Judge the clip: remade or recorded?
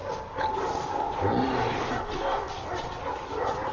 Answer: recorded